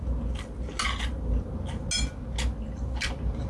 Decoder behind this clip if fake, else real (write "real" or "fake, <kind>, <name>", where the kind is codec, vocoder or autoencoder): real